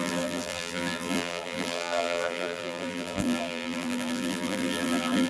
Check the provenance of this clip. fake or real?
fake